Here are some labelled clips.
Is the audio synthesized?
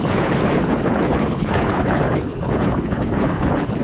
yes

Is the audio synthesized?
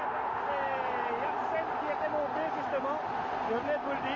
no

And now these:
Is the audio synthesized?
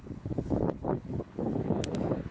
yes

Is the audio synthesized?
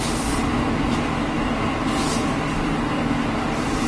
no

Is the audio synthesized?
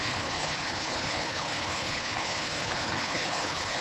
yes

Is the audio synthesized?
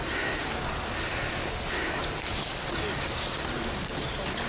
no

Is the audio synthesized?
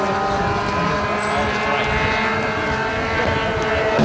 no